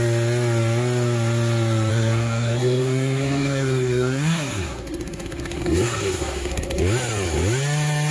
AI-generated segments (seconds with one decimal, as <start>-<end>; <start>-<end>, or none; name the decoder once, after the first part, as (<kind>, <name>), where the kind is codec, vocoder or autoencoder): 1.9-6.8 (codec, SNAC)